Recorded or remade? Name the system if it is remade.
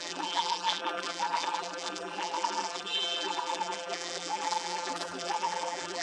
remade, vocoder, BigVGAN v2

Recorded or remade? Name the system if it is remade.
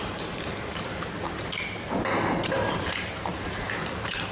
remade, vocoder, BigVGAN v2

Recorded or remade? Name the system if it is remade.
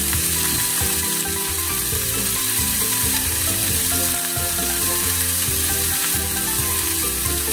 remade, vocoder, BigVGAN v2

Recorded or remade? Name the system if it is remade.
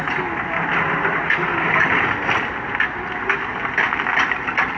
recorded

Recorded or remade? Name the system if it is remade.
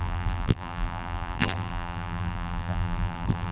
remade, vocoder, BigVGAN v2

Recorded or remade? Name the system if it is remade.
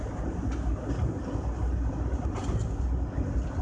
recorded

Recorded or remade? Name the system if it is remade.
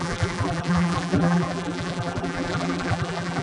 remade, vocoder, BigVGAN v2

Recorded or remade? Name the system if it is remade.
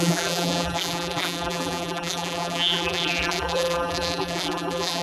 remade, vocoder, BigVGAN v2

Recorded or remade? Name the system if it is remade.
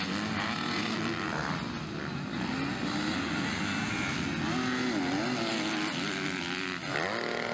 recorded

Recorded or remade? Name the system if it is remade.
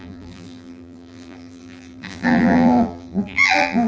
remade, vocoder, BigVGAN v2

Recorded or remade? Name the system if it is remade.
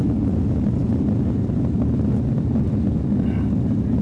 recorded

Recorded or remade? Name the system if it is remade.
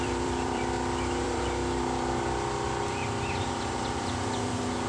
remade, vocoder, BigVGAN v2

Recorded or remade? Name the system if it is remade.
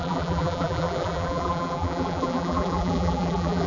remade, vocoder, BigVGAN v2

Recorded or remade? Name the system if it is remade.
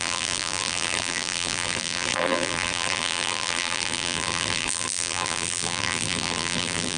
remade, vocoder, BigVGAN v2